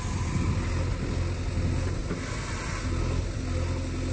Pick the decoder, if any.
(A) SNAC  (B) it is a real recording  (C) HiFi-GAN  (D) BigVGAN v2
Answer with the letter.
B